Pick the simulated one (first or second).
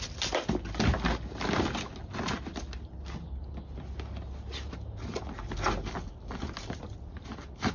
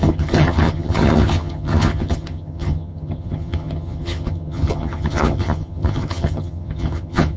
second